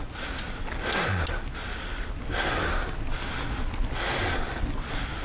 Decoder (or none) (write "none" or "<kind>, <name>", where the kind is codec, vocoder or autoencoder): none